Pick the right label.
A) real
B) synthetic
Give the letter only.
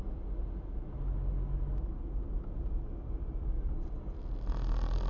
A